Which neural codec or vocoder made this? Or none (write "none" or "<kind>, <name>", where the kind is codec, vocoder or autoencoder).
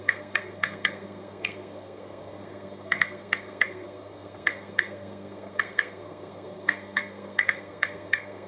codec, SNAC